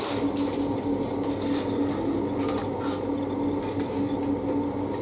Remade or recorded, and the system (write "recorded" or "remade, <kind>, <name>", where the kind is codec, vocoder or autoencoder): recorded